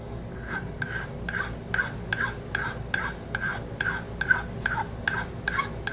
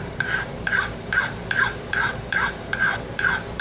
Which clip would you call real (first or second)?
first